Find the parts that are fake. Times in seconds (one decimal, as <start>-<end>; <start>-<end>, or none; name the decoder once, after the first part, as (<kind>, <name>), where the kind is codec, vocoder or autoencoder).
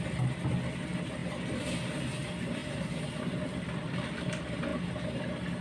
none